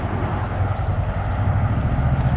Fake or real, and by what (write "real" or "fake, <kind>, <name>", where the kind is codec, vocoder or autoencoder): real